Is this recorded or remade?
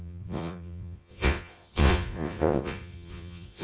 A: remade